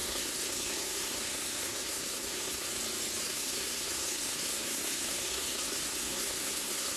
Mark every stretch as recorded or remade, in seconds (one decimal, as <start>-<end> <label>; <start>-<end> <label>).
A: 0.0-2.7 remade; 2.7-3.2 recorded; 3.2-7.0 remade